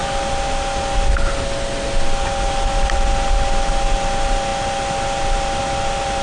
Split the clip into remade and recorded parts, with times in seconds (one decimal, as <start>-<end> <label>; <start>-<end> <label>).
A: 0.0-6.2 recorded